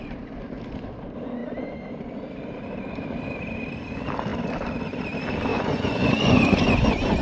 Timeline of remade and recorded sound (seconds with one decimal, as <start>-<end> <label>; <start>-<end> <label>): 0.0-5.5 recorded; 5.5-7.2 remade